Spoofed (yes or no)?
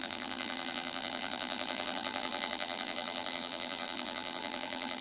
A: yes